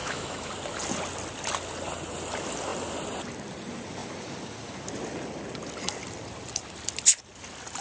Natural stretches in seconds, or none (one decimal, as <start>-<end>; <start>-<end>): 0.5-7.8